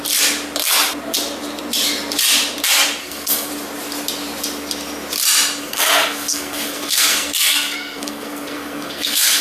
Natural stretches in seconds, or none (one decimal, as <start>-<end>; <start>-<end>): 0.0-3.0; 3.5-5.6